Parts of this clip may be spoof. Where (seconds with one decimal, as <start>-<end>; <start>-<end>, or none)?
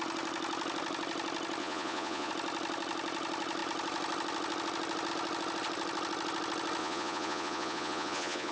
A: 1.6-2.3; 6.8-8.5